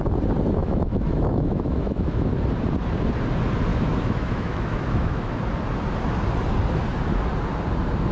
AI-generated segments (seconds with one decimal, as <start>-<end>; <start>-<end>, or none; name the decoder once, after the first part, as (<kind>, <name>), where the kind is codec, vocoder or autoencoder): 0.6-2.3 (autoencoder, DAC-VAE); 3.7-5.5